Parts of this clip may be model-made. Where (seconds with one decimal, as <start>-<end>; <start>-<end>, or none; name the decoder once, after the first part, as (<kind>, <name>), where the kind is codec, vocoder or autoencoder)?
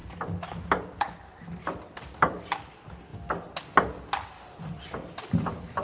none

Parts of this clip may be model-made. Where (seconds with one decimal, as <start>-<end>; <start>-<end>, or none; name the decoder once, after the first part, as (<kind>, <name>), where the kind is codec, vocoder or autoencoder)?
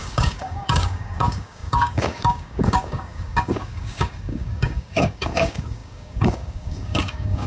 0.0-7.5 (codec, DAC)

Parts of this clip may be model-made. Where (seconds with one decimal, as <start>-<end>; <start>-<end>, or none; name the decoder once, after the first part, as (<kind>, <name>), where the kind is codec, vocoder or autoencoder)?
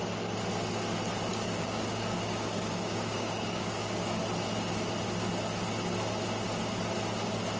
1.3-4.2 (codec, DAC)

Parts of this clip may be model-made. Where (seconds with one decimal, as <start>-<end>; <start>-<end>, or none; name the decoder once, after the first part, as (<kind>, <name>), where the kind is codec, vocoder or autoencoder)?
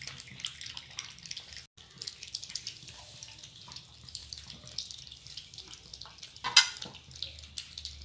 none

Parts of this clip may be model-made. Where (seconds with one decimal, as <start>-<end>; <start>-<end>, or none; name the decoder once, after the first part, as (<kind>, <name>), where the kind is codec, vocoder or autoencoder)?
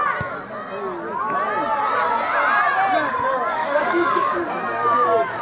3.6-5.4 (codec, DAC)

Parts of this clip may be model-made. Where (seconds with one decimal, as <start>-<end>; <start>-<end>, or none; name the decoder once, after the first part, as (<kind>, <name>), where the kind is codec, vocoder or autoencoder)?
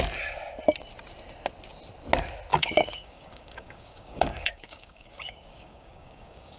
2.5-6.6 (codec, DAC)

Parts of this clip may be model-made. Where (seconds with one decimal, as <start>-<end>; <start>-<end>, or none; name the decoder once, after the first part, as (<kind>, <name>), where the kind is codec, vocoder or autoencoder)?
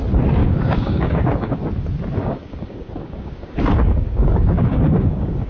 0.4-1.6 (codec, DAC); 2.2-5.5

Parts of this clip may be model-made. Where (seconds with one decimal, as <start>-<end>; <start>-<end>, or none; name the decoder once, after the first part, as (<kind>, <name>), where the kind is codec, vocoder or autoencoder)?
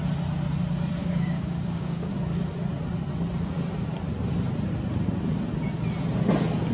1.0-2.1 (codec, DAC)